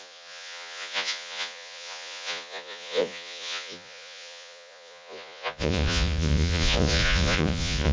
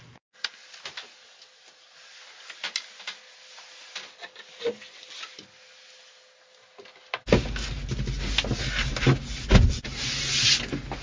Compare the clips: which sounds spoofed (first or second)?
first